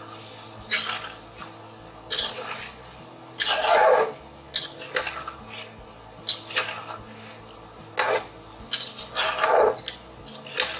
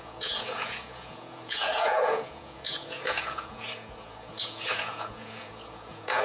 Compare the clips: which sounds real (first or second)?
first